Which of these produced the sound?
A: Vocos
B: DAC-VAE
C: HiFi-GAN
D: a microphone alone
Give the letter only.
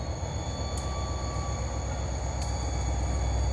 D